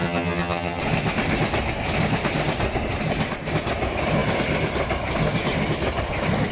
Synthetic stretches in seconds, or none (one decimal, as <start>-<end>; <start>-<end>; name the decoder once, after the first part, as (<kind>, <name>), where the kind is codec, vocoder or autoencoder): 0.0-0.8 (vocoder, HiFi-GAN)